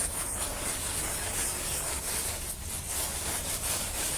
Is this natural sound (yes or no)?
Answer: no